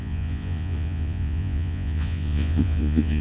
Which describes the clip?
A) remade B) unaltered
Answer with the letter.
A